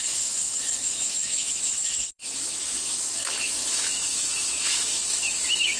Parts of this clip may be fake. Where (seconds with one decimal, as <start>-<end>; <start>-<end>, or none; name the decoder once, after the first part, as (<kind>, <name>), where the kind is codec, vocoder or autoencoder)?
0.0-5.8 (autoencoder, DAC-VAE)